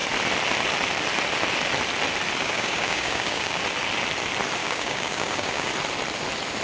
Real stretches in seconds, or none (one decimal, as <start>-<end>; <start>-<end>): 0.0-2.4; 3.6-4.6; 5.7-6.6